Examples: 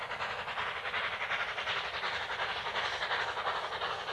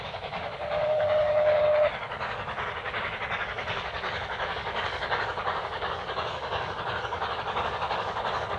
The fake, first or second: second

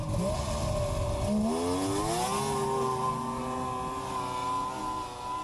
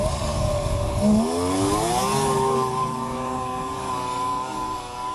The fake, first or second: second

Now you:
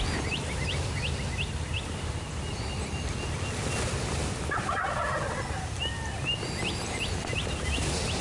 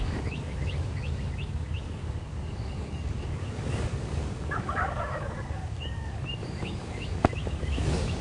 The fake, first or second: second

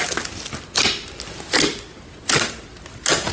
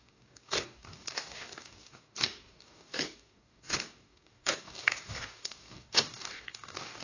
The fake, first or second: second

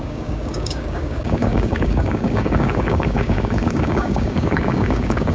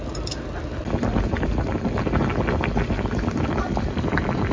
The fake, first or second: first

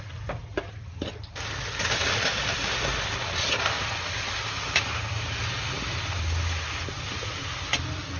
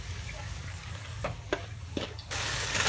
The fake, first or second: second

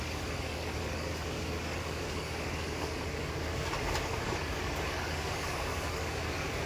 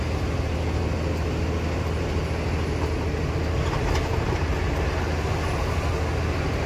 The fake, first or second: first